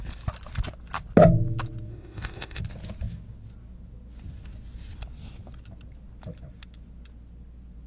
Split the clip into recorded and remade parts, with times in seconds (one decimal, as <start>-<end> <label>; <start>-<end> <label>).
0.0-1.9 recorded; 1.9-2.6 remade; 2.6-7.9 recorded